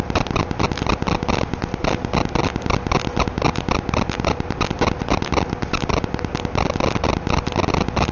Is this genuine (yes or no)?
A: yes